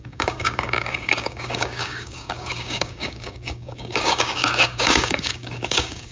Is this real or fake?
fake